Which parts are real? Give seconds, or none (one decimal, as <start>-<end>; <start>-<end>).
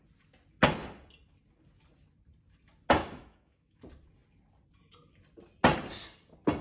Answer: 0.0-3.0; 3.8-6.6